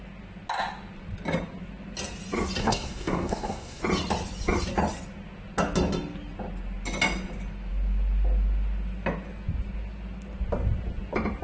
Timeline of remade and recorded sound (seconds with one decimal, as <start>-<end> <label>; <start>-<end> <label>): 0.0-2.6 recorded; 2.6-3.8 remade; 3.8-11.4 recorded